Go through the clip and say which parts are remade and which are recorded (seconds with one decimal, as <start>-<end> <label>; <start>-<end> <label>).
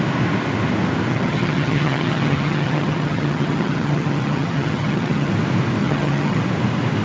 0.0-1.1 recorded; 1.1-5.3 remade; 5.3-5.8 recorded; 5.8-6.4 remade; 6.4-7.0 recorded